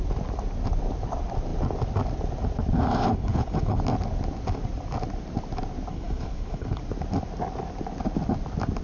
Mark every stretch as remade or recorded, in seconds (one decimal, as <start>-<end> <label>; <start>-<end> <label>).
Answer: 0.0-3.0 recorded; 3.0-3.8 remade; 3.8-5.9 recorded; 5.9-6.8 remade; 6.8-8.8 recorded